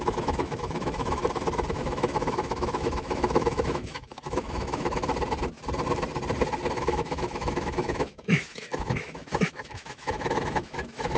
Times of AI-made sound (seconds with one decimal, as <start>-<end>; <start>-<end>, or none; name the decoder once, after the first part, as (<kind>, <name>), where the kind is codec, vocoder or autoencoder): 0.0-1.2 (autoencoder, DAC-VAE); 1.7-5.1; 6.8-11.2